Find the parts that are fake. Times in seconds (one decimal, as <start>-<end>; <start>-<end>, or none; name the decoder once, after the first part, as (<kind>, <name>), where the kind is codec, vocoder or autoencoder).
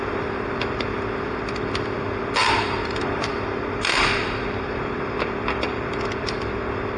2.4-4.8 (vocoder, BigVGAN v2)